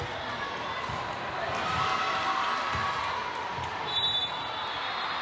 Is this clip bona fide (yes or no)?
yes